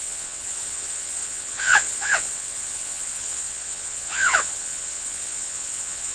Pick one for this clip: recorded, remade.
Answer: remade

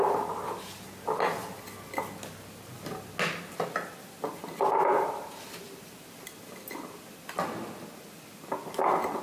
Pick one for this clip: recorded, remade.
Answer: recorded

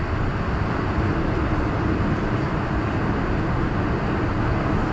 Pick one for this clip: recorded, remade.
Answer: recorded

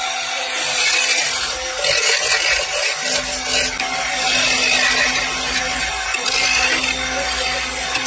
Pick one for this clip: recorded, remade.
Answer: recorded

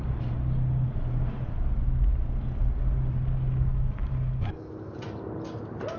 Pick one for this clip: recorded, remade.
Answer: recorded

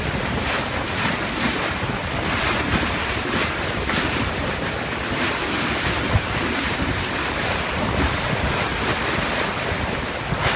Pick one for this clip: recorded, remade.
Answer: remade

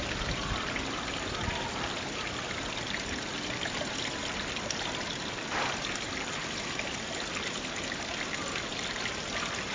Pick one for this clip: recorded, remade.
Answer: recorded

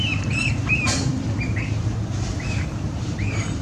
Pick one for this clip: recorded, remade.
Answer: remade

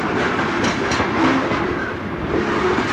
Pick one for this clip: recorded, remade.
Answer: recorded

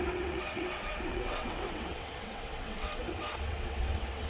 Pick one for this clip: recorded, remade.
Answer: remade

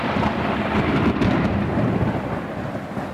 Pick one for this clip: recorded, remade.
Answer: recorded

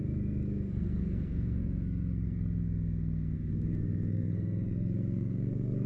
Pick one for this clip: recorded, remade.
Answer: remade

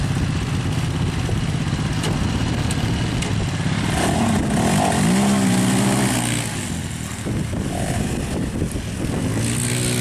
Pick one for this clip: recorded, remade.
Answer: recorded